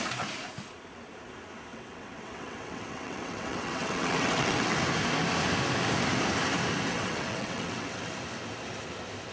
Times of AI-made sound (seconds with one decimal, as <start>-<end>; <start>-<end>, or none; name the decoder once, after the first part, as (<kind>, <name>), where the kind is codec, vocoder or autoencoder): 1.7-4.8 (vocoder, WaveNeXt); 6.9-8.1